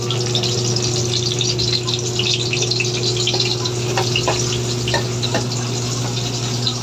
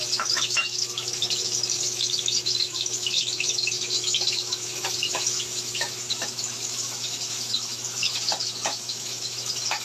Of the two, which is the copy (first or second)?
second